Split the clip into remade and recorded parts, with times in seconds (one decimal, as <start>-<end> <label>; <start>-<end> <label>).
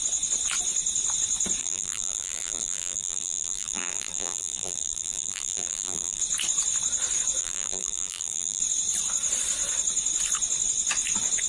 0.0-1.6 recorded; 1.6-6.2 remade; 6.2-7.4 recorded; 7.4-8.6 remade; 8.6-11.5 recorded